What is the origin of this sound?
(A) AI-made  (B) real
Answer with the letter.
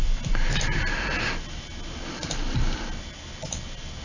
B